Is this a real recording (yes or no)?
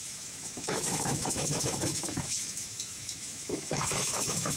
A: no